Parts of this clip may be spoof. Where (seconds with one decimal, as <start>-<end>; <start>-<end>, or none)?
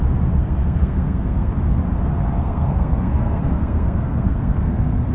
0.4-1.5; 2.4-5.1